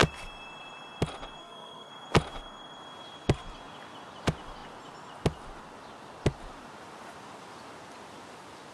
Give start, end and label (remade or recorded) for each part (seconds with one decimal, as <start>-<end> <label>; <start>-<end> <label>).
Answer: 0.0-1.4 recorded; 1.4-1.9 remade; 1.9-8.7 recorded